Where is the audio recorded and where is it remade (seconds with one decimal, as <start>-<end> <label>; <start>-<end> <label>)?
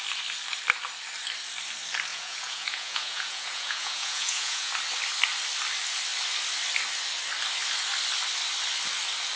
0.0-2.1 recorded; 2.1-4.7 remade; 4.7-9.4 recorded